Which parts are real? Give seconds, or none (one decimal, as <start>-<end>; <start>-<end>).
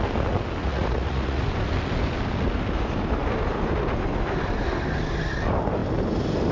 0.0-0.6; 1.4-6.5